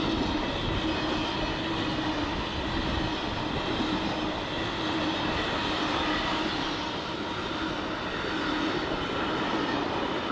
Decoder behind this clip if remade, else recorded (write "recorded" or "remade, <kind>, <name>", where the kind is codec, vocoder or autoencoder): recorded